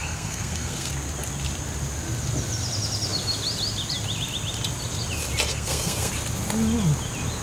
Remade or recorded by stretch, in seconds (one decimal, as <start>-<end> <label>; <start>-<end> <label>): 0.0-0.9 remade; 0.9-5.5 recorded; 5.5-6.1 remade; 6.1-7.4 recorded